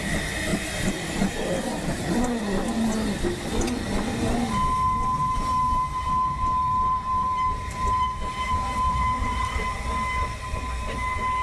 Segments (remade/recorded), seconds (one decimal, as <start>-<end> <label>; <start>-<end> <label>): 0.0-0.5 recorded; 0.5-2.4 remade; 2.4-5.2 recorded; 5.2-9.9 remade; 9.9-11.4 recorded